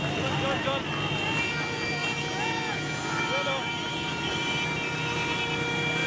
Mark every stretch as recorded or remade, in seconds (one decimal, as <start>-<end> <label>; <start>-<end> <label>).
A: 0.0-6.1 recorded